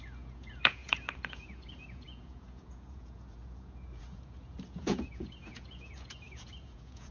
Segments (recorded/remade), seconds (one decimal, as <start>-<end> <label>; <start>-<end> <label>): 0.0-7.1 remade